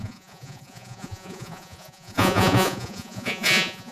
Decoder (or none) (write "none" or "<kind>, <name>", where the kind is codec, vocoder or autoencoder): vocoder, Vocos